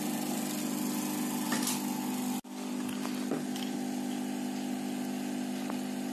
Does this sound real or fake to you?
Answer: real